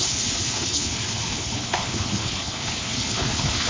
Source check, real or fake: fake